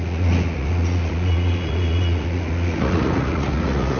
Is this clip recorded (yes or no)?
no